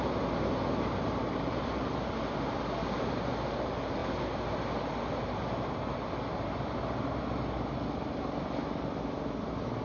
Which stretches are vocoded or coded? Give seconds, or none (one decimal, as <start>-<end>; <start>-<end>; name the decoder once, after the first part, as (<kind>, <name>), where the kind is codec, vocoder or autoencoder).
none